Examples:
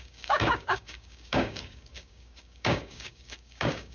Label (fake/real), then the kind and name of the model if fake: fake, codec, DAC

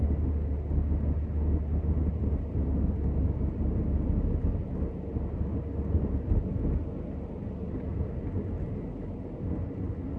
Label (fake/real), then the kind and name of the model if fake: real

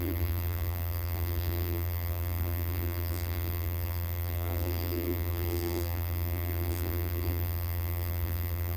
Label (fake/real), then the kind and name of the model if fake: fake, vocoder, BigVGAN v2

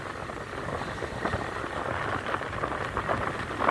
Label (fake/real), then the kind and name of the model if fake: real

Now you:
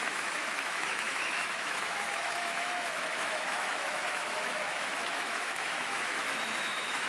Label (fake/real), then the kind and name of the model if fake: fake, autoencoder, DAC-VAE